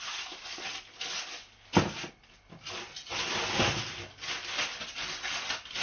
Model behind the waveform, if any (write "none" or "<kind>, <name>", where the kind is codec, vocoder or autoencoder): none